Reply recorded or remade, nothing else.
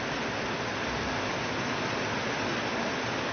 recorded